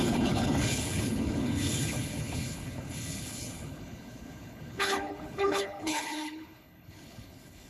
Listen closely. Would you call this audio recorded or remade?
remade